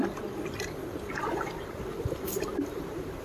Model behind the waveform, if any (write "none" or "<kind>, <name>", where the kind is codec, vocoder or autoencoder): none